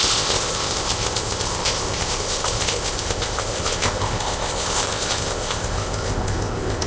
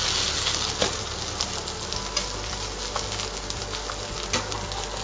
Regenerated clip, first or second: first